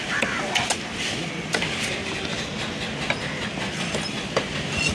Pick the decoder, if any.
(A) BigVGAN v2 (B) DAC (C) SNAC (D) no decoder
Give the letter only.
D